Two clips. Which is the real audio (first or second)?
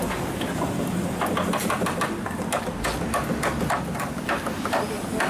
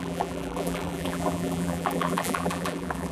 first